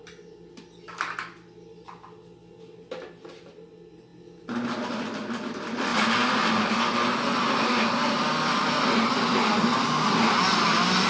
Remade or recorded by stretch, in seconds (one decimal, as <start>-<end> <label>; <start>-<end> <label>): 0.0-11.1 recorded